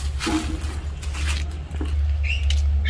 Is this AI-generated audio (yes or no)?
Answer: no